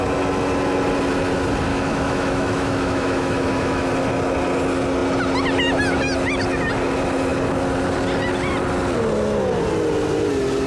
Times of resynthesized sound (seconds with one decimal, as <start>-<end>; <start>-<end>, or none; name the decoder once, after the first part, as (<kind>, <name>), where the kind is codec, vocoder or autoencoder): 1.7-3.9 (autoencoder, DAC-VAE)